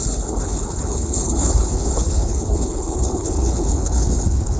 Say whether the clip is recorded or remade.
remade